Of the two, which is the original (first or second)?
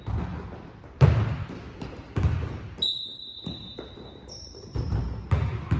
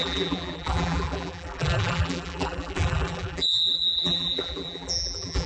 first